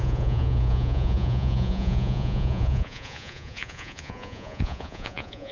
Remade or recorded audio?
remade